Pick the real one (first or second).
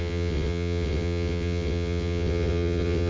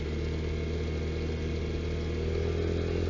second